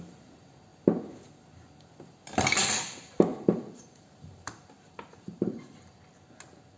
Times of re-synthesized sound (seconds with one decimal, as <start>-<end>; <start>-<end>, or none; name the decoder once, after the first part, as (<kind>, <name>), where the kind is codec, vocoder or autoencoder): 3.3-6.0 (vocoder, BigVGAN v2)